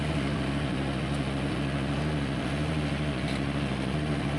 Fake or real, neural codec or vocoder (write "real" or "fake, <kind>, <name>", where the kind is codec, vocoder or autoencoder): fake, vocoder, Vocos